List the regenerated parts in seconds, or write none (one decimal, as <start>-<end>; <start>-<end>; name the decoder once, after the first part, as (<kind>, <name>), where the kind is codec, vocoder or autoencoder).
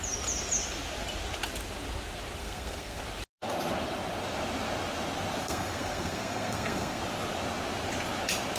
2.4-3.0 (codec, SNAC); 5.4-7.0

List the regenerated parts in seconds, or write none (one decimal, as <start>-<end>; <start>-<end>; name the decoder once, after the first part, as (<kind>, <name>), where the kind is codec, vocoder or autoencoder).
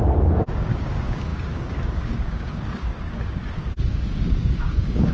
0.0-5.1 (codec, DAC)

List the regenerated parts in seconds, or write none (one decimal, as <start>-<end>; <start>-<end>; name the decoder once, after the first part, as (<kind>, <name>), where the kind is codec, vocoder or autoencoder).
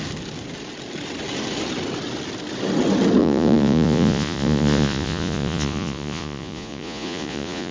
3.2-7.7 (vocoder, Vocos)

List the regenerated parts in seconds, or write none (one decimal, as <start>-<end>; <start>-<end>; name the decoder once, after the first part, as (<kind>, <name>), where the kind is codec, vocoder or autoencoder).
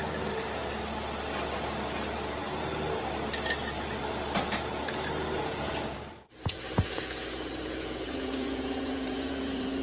5.4-9.8 (vocoder, Vocos)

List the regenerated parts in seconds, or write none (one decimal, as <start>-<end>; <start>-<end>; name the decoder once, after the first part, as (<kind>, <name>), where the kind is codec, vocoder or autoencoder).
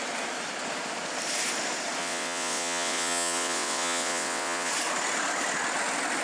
2.0-4.7 (vocoder, WaveNeXt)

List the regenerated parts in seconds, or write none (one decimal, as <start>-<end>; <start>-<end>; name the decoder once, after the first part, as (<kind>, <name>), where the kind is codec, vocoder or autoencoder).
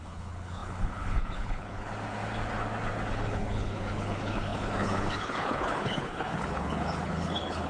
0.0-1.9 (codec, HILCodec); 3.1-7.7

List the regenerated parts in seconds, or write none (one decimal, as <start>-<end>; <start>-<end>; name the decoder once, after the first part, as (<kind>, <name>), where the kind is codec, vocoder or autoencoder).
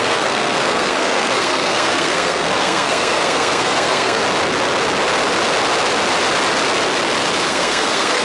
0.0-4.2 (codec, SNAC); 7.5-8.2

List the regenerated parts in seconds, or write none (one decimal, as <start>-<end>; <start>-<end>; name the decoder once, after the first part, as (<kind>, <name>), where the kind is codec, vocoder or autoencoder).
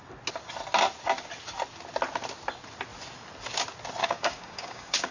4.0-5.1 (codec, DAC)